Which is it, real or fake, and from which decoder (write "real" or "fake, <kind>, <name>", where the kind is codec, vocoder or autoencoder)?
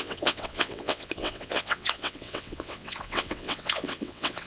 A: fake, vocoder, WaveNeXt